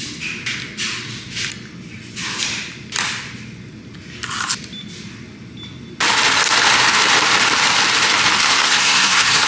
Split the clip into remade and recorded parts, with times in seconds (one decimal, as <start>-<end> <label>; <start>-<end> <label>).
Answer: 0.0-8.4 recorded; 8.4-9.5 remade